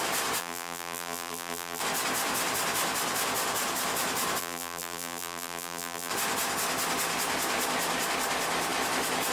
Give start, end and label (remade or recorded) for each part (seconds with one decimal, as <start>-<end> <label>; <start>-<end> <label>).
0.0-0.4 recorded; 0.4-1.8 remade; 1.8-4.4 recorded; 4.4-6.1 remade; 6.1-9.3 recorded